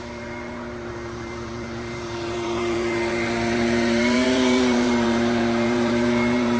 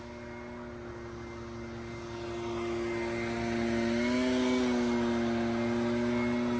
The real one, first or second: second